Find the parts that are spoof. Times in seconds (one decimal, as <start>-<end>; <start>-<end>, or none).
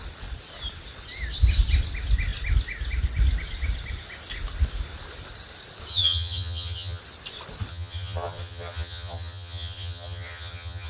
5.9-7.0; 7.7-10.9